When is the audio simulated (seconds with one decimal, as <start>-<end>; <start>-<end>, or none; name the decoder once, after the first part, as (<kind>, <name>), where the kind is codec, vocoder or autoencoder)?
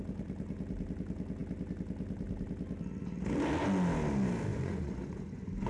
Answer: 4.5-5.7 (vocoder, Vocos)